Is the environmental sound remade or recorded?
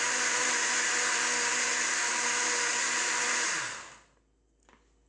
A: recorded